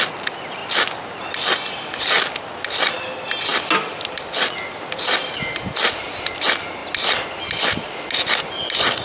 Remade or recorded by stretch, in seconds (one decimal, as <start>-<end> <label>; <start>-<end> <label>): 0.0-9.0 recorded